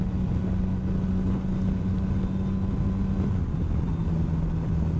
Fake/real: real